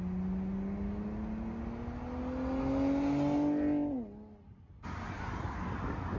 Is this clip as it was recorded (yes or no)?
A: yes